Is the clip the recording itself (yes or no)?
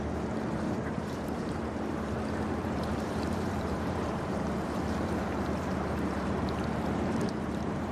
no